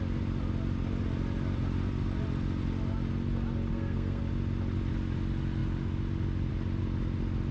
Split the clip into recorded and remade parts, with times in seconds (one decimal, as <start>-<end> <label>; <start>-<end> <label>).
0.0-3.7 recorded; 3.7-4.2 remade; 4.2-7.5 recorded

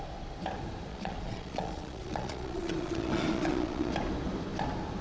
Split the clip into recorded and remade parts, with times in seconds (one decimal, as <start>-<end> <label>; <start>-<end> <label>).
0.0-0.9 recorded; 0.9-3.9 remade; 3.9-5.0 recorded